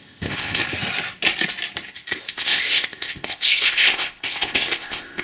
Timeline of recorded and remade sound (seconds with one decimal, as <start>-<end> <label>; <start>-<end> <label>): 0.0-0.6 remade; 0.6-1.9 recorded; 1.9-5.2 remade